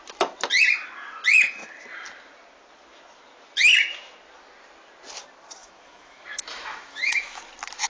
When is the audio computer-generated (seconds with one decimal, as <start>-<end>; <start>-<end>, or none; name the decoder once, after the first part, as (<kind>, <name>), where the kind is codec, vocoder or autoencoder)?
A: 5.6-7.4 (autoencoder, DAC-VAE)

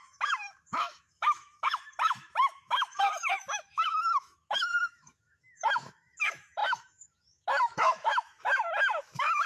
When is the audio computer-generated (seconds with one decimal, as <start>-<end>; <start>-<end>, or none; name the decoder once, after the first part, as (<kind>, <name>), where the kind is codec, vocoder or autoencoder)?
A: 0.0-9.5 (autoencoder, DAC-VAE)

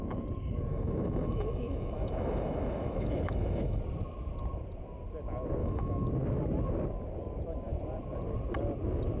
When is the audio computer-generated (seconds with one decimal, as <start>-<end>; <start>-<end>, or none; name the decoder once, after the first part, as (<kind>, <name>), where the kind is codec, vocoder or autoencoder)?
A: 0.7-3.8 (autoencoder, DAC-VAE); 5.6-6.1

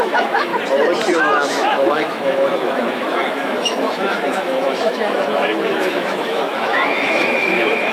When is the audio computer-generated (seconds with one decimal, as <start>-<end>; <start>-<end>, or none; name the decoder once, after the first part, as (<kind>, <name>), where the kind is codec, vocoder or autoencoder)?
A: 0.0-0.5 (autoencoder, DAC-VAE); 1.2-7.9

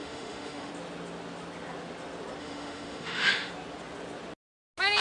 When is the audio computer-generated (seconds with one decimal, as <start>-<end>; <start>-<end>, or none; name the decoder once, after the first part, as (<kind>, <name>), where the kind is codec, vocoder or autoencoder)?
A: 0.0-0.7 (autoencoder, DAC-VAE); 2.4-3.5

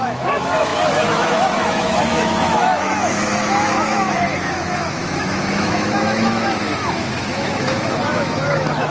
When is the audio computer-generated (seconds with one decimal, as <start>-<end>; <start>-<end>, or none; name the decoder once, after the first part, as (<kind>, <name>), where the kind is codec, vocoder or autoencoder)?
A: 0.0-8.9 (autoencoder, DAC-VAE)

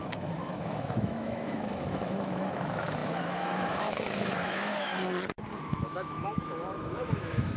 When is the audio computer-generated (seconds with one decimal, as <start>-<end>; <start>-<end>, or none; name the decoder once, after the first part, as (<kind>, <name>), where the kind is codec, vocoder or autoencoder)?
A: 0.0-4.9 (autoencoder, DAC-VAE); 5.6-7.6